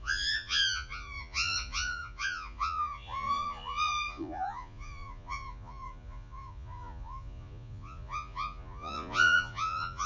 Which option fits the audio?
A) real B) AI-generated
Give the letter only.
B